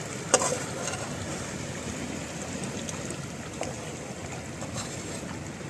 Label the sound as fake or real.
real